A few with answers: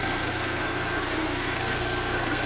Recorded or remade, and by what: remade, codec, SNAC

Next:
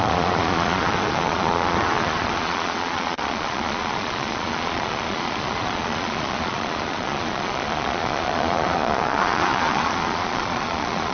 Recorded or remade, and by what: remade, vocoder, Vocos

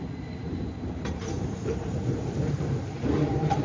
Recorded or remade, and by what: remade, vocoder, BigVGAN v2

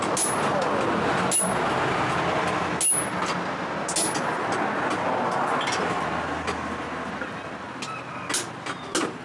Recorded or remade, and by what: recorded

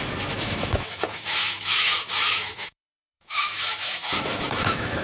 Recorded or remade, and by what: remade, autoencoder, DAC-VAE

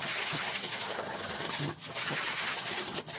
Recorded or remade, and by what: remade, vocoder, HiFi-GAN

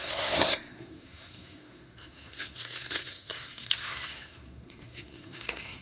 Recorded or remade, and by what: remade, codec, SNAC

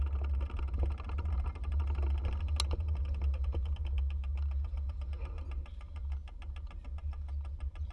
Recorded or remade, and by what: recorded